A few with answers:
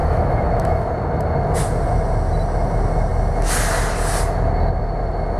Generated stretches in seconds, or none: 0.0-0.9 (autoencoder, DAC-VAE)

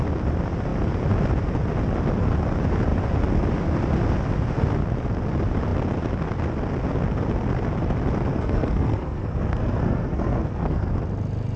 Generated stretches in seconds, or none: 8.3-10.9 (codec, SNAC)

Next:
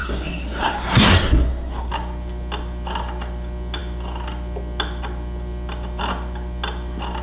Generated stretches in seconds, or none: 0.0-1.9 (codec, SNAC)

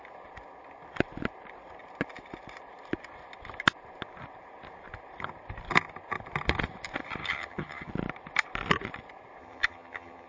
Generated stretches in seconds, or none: 7.2-7.9 (vocoder, HiFi-GAN); 9.4-10.3